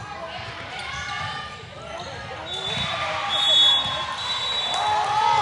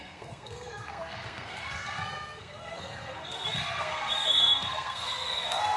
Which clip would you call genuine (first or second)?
first